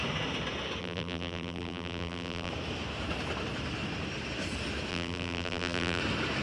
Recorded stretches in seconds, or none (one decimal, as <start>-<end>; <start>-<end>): 0.0-0.8; 2.5-4.9; 6.0-6.4